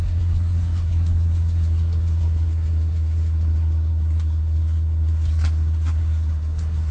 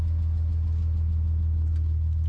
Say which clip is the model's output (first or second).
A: first